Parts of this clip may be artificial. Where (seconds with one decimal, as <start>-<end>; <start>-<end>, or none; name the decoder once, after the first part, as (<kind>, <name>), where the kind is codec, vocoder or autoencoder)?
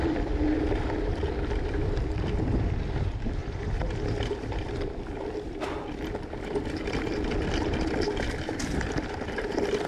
0.0-9.9 (vocoder, BigVGAN v2)